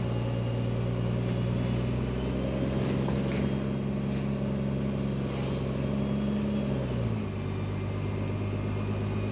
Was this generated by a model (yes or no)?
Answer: no